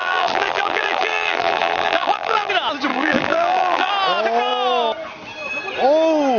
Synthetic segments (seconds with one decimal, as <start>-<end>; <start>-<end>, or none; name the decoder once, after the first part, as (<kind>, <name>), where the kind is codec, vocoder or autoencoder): 0.0-2.5 (vocoder, BigVGAN v2); 2.9-3.9